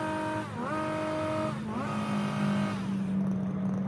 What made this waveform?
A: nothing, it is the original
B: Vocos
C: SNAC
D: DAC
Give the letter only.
A